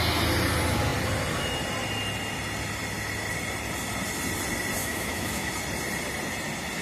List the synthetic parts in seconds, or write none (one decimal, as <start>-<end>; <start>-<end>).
4.8-5.5